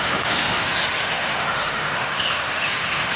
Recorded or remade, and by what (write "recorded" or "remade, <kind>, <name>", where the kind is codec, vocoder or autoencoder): remade, autoencoder, DAC-VAE